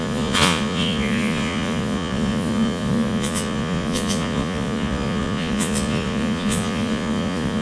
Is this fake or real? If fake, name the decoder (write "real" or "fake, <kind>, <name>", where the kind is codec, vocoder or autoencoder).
fake, vocoder, Vocos